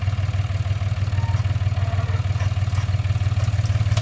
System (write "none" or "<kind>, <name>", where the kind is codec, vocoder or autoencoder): none